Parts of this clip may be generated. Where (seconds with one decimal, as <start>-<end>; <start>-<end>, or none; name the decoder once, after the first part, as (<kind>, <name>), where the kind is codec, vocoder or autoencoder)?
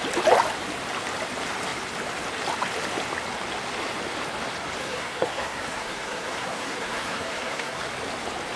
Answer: 4.8-7.8 (codec, SNAC)